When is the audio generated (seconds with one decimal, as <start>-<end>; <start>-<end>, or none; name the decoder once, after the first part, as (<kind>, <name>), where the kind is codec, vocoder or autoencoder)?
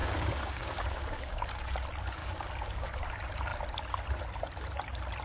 0.0-1.8 (codec, DAC); 2.2-3.0